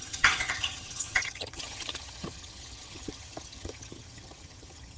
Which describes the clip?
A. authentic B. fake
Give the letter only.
B